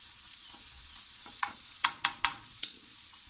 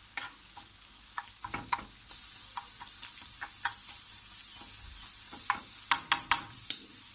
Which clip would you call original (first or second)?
second